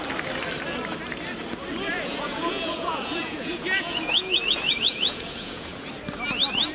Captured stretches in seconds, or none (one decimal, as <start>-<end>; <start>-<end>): 0.0-1.9; 5.9-6.7